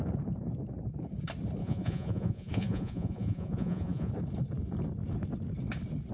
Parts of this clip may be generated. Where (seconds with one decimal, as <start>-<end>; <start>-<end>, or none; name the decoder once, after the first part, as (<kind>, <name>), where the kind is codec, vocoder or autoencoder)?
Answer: 1.6-4.1 (vocoder, Vocos)